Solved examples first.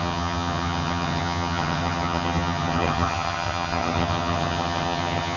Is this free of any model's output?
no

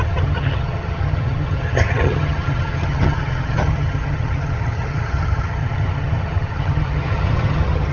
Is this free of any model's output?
no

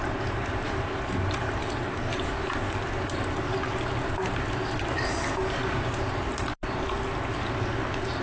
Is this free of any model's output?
yes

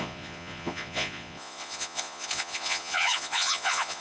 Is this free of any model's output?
no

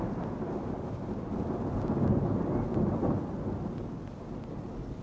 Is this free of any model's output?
yes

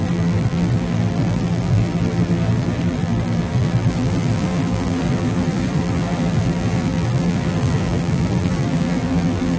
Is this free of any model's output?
no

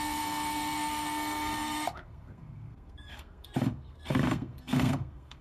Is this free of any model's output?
no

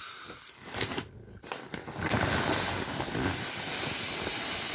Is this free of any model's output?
yes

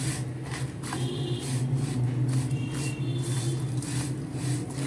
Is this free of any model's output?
yes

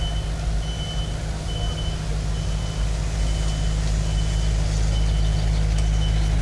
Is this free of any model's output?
yes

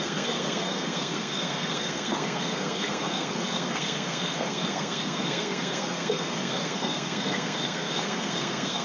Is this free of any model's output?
no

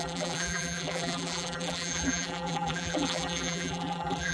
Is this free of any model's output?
no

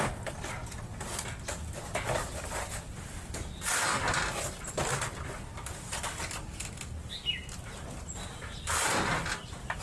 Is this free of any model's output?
yes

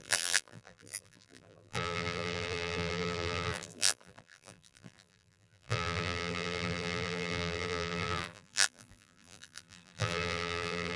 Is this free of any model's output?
no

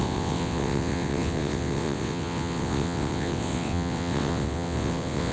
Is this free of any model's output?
no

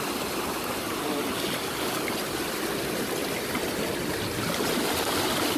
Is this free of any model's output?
yes